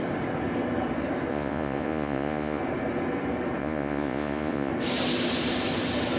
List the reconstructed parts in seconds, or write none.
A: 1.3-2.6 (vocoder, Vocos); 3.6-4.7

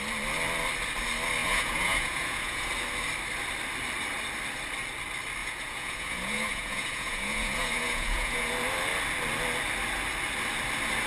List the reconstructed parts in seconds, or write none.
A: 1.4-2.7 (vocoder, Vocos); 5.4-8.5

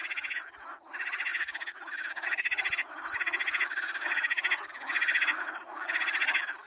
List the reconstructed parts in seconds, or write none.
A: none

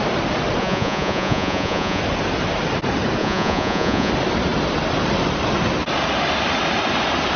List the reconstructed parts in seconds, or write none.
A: 0.6-2.0 (vocoder, Vocos); 3.2-4.1